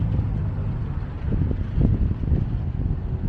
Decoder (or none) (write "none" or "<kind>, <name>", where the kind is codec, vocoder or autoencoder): none